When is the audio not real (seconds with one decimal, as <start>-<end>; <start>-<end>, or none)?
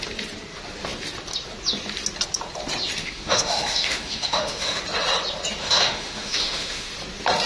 3.0-4.8; 5.6-6.9